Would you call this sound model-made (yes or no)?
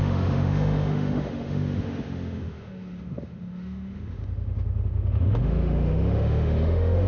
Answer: yes